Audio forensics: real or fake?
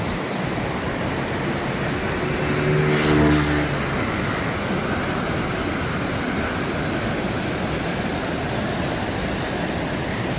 real